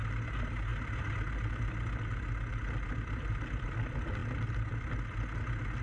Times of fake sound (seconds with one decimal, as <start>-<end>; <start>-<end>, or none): none